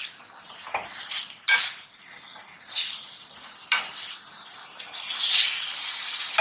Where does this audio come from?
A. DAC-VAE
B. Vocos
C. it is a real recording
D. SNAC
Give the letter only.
C